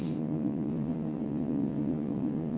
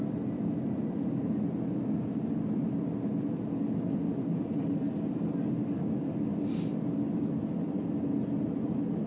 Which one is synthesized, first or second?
first